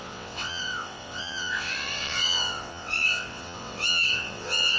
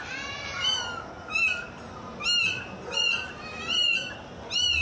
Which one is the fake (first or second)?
first